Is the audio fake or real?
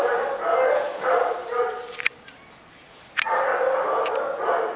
real